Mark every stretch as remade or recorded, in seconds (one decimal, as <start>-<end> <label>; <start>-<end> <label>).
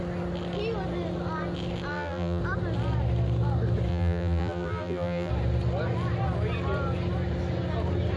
0.0-1.9 recorded; 1.9-2.4 remade; 2.4-3.9 recorded; 3.9-5.3 remade; 5.3-8.2 recorded